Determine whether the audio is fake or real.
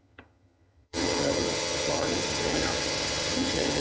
fake